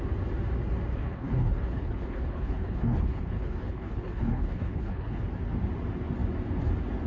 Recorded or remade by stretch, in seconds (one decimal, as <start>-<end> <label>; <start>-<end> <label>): 0.0-0.9 recorded; 0.9-5.2 remade; 5.2-7.1 recorded